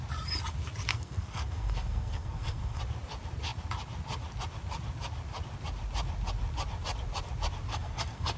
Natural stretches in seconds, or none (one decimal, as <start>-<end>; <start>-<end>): 0.0-0.9; 2.8-7.7